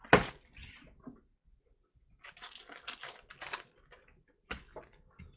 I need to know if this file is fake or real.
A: real